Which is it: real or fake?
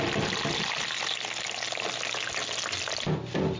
real